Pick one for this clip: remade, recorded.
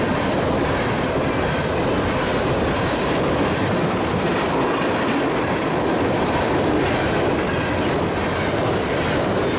recorded